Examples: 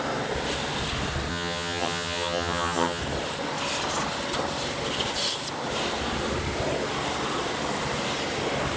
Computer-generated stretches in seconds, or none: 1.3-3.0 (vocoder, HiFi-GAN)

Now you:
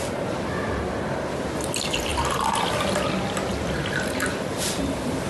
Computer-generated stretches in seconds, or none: none